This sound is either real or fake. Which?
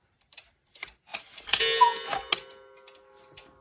real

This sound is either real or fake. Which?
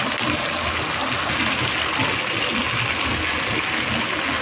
real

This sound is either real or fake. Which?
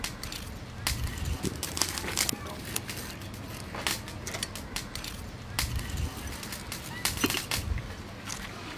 real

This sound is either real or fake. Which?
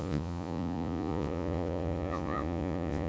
fake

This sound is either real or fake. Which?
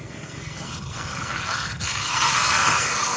fake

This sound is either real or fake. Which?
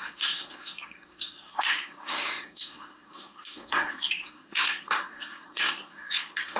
fake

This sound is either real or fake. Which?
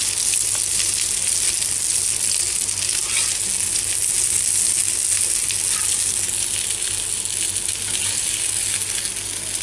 real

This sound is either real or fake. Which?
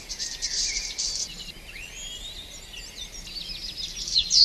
real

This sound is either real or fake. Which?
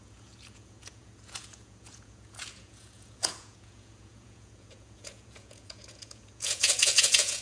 fake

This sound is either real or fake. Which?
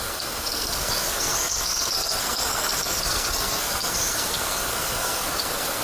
fake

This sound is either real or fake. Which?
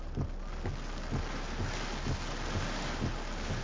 real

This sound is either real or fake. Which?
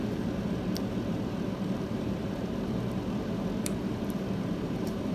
fake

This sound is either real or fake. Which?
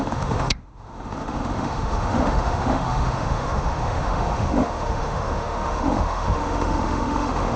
fake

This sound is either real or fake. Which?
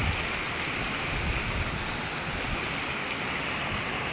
real